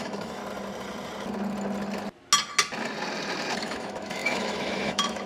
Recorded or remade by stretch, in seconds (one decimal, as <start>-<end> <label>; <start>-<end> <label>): 0.0-0.4 remade; 0.4-3.6 recorded; 3.6-5.3 remade